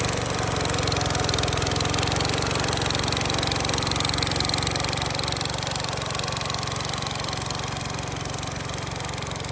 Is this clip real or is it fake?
real